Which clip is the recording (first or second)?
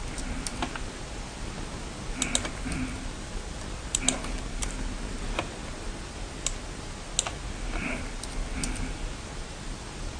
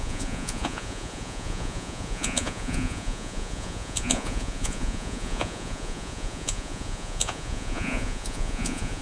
first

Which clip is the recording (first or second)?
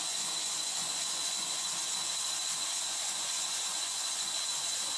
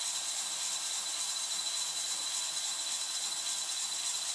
second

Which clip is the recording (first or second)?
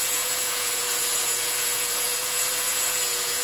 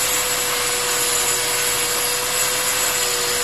second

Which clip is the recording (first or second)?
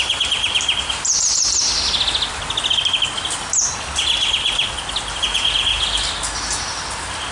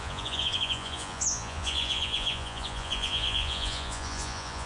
first